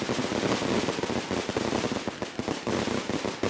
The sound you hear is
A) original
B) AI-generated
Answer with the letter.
A